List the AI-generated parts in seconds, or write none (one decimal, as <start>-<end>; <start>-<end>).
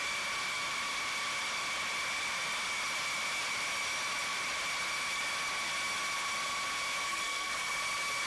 7.1-7.7